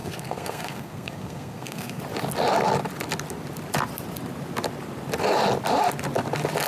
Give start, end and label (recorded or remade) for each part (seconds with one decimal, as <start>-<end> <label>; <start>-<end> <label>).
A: 0.0-2.0 remade; 2.0-6.7 recorded